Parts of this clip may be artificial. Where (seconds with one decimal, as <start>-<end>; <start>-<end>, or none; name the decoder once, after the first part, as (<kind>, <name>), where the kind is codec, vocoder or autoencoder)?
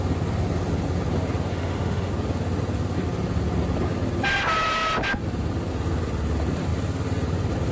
1.5-2.1 (autoencoder, DAC-VAE)